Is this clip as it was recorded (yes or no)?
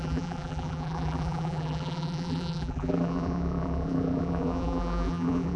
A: no